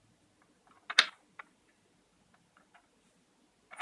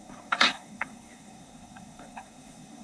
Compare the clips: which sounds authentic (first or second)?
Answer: first